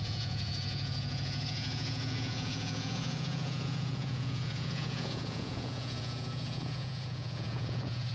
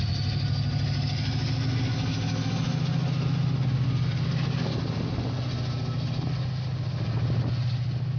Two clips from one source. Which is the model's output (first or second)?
first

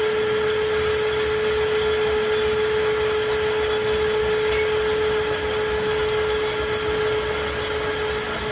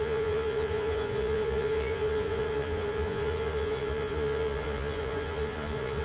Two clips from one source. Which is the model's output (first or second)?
second